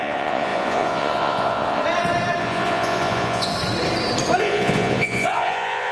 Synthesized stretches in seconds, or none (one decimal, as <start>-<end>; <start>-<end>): 0.0-1.8; 2.4-3.5; 4.4-5.9